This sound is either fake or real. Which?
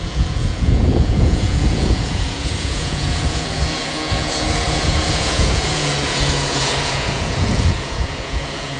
fake